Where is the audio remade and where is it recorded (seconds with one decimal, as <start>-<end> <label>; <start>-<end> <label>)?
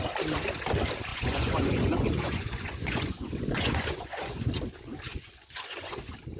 0.0-1.1 recorded; 1.1-4.5 remade; 4.5-5.1 recorded; 5.1-6.0 remade; 6.0-6.4 recorded